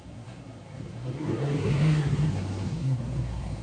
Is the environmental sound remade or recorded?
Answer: remade